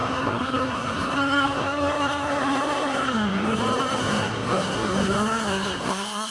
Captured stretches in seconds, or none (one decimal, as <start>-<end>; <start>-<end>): 3.6-4.0